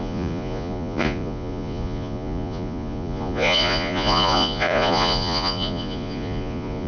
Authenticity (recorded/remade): remade